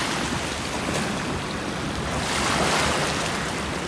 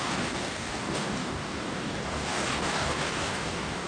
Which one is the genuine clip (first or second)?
first